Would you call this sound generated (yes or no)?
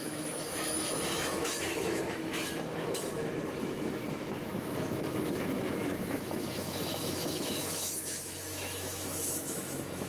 yes